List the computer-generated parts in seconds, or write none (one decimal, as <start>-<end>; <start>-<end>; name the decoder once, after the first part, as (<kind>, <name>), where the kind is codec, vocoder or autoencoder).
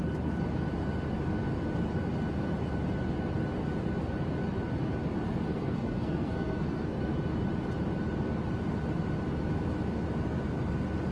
5.5-7.1 (codec, SNAC)